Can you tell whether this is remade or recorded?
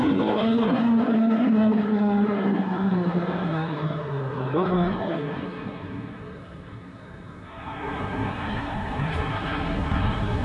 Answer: remade